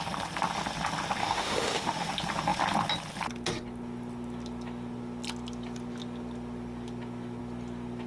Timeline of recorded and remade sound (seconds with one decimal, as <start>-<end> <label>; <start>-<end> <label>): 0.0-1.2 recorded; 1.2-2.1 remade; 2.1-8.1 recorded